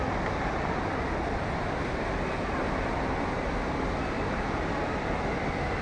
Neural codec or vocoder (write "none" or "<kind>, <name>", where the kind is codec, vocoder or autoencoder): none